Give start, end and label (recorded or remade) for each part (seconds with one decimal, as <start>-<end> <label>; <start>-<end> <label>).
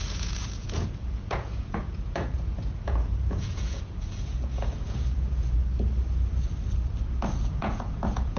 0.0-5.6 remade; 5.6-7.5 recorded; 7.5-8.4 remade